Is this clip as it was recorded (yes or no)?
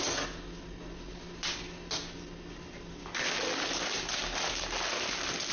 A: yes